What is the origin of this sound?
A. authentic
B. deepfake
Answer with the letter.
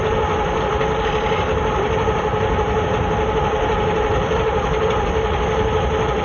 A